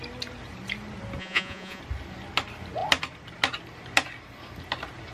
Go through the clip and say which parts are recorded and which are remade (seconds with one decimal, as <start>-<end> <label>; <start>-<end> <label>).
0.0-1.2 recorded; 1.2-1.8 remade; 1.8-5.1 recorded